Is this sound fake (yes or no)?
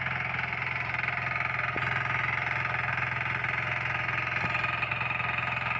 no